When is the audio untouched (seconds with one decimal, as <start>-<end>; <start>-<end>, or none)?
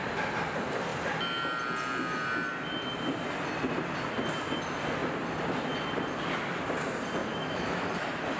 0.0-7.2; 7.9-8.4